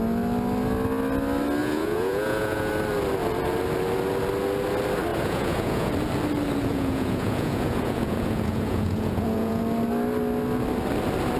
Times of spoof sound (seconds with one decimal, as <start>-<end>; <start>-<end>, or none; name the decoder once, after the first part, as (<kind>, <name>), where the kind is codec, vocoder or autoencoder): 1.6-2.7 (vocoder, Vocos); 5.1-5.9; 6.7-9.6